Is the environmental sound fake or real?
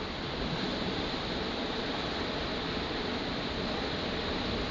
real